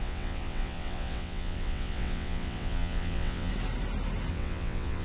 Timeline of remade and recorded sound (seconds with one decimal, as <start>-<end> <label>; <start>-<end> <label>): 0.0-3.5 remade; 3.5-4.3 recorded; 4.3-5.0 remade